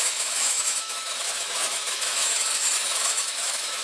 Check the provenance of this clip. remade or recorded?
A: remade